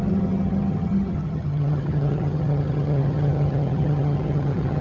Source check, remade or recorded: remade